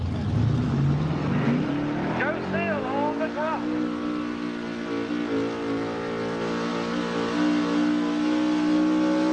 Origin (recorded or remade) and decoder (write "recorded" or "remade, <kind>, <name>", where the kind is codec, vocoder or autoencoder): recorded